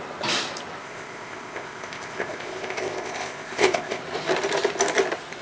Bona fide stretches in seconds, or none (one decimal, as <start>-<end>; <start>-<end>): 0.0-0.8; 4.0-5.4